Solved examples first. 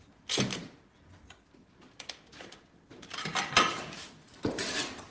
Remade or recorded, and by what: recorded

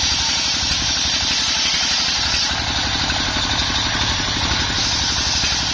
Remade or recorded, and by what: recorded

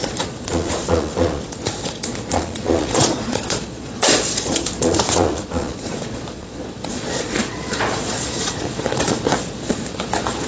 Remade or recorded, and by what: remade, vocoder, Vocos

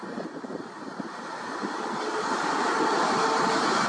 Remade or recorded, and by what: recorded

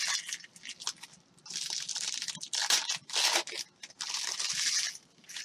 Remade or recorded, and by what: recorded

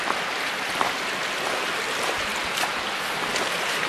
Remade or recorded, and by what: recorded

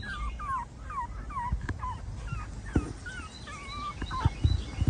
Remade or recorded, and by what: recorded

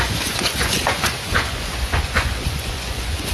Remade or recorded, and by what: remade, vocoder, Vocos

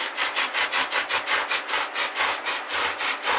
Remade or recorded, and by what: recorded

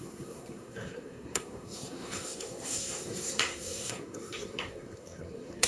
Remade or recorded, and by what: remade, codec, SNAC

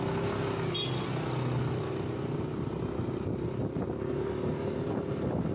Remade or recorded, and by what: recorded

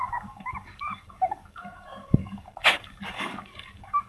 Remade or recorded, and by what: remade, codec, DAC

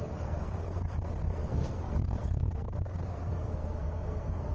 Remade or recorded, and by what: remade, codec, SNAC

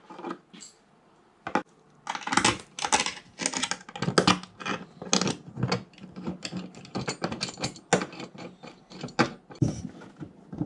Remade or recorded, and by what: recorded